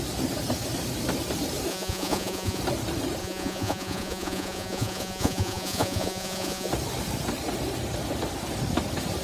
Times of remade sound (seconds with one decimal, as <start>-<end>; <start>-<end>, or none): 1.7-2.6; 3.2-6.7